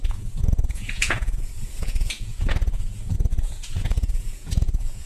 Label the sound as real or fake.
fake